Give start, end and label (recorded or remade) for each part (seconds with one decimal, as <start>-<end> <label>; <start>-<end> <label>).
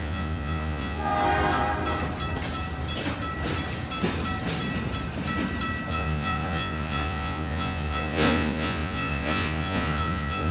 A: 0.0-1.1 remade; 1.1-5.9 recorded; 5.9-10.5 remade